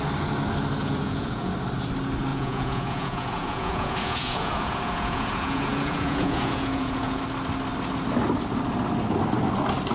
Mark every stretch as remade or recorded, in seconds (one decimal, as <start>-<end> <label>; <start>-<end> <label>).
0.0-0.8 recorded; 0.8-1.5 remade; 1.5-2.3 recorded; 2.3-7.2 remade; 7.2-9.9 recorded